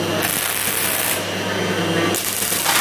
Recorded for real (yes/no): yes